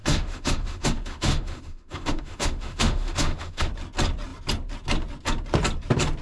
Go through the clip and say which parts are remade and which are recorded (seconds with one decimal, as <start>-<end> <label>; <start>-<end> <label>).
0.0-3.7 remade; 3.7-6.2 recorded